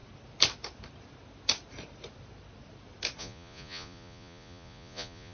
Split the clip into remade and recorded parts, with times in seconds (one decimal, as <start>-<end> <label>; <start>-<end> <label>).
0.0-3.2 recorded; 3.2-5.3 remade